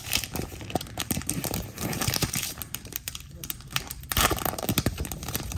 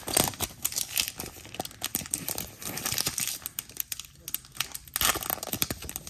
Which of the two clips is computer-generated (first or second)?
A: first